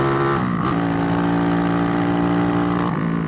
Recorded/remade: remade